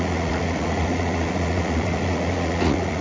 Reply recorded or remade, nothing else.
remade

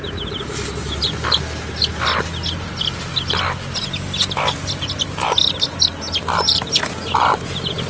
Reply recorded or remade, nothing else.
recorded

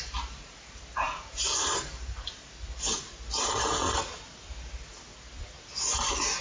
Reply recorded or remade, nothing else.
remade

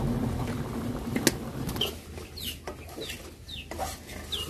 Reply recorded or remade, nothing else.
recorded